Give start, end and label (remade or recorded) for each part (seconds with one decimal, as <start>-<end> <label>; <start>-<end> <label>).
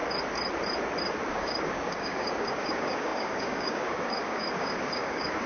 0.0-1.3 recorded; 1.3-5.5 remade